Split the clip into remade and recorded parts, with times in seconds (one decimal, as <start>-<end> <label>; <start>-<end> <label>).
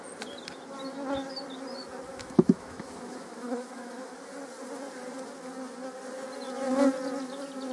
0.0-2.1 recorded; 2.1-4.1 remade; 4.1-7.7 recorded